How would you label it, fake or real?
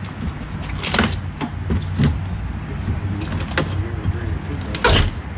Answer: real